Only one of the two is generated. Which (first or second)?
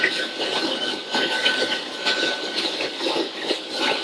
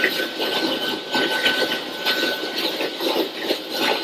first